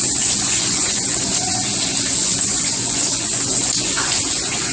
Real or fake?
fake